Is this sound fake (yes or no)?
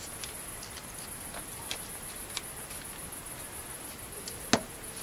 no